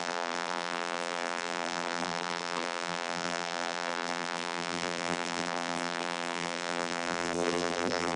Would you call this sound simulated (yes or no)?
yes